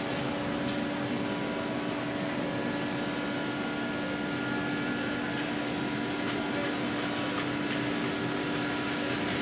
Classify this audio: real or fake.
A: real